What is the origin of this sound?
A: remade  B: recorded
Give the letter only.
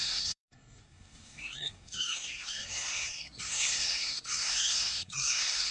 A